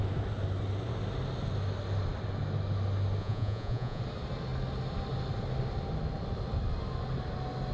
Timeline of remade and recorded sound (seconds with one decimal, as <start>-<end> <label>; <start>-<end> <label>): 0.0-3.2 recorded; 3.2-4.0 remade; 4.0-7.7 recorded